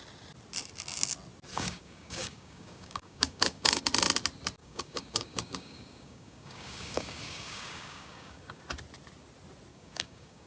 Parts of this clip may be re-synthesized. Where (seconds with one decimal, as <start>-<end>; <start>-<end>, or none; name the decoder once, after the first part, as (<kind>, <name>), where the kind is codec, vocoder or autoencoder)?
1.5-3.8 (codec, DAC); 4.6-8.6; 9.7-10.5

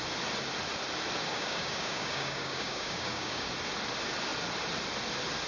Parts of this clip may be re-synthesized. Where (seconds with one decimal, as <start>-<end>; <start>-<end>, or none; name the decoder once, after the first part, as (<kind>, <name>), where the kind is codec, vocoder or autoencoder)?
1.2-3.5 (codec, DAC)

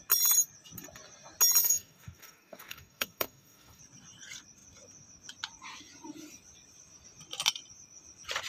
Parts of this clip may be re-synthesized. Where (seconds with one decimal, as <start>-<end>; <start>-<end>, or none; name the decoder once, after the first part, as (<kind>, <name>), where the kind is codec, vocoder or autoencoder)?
1.6-3.8 (codec, DAC)